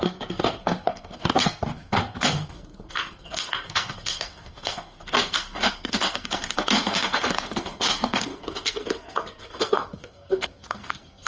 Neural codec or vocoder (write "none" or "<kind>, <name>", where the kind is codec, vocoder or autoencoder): codec, SNAC